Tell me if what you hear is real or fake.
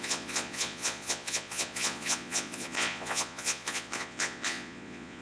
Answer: fake